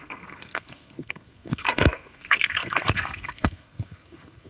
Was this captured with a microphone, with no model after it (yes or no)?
no